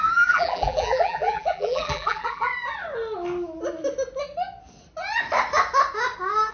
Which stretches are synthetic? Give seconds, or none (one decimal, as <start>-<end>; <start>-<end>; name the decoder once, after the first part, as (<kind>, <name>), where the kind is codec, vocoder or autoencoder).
0.0-2.5 (vocoder, BigVGAN v2)